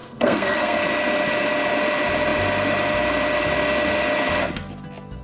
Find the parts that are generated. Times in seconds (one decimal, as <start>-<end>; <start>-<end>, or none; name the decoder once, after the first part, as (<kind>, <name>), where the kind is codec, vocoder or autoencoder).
0.0-0.8 (codec, SNAC)